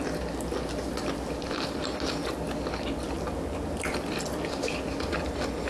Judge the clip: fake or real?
real